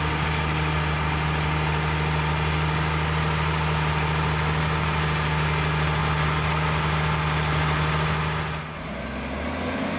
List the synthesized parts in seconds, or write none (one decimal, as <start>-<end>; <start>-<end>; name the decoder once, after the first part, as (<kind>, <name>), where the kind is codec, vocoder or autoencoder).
none